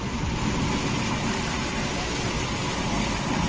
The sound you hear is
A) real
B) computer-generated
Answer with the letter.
A